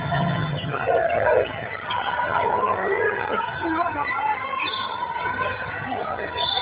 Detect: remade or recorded remade